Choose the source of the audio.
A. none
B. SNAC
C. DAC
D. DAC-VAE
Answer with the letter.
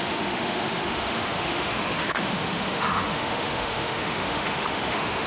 D